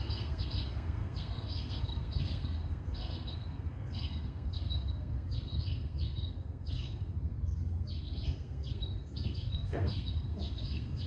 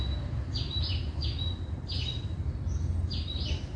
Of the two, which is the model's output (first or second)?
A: first